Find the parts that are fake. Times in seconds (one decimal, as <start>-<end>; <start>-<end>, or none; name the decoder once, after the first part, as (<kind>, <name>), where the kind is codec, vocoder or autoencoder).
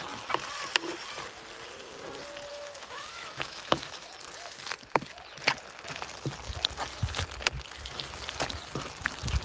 2.5-4.1 (autoencoder, DAC-VAE)